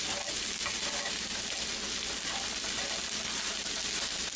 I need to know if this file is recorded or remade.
recorded